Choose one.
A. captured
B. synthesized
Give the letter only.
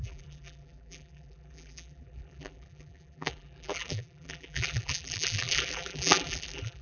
B